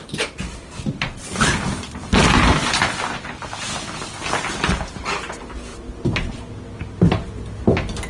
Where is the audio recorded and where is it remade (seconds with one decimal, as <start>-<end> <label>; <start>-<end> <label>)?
0.0-8.1 recorded